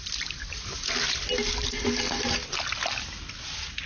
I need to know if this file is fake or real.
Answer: real